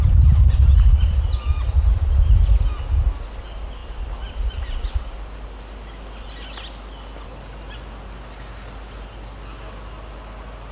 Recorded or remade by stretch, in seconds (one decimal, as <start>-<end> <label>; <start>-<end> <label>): 0.0-10.7 recorded